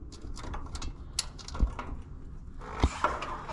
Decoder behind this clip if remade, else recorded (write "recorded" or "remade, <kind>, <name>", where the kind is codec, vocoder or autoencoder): recorded